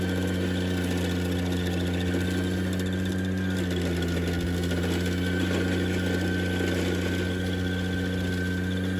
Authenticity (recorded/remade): recorded